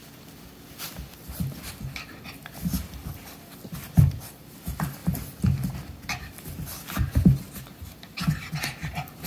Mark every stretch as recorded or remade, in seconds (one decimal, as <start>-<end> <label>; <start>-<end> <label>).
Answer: 0.0-9.3 recorded